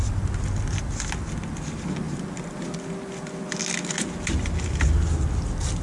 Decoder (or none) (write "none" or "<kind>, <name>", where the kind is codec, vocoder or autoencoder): none